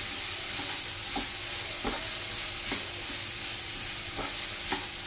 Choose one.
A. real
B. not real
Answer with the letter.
A